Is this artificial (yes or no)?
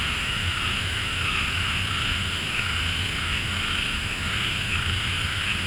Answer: yes